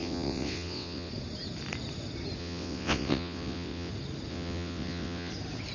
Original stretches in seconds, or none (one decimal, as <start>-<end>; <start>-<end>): 1.1-2.4; 3.9-4.3; 5.3-5.7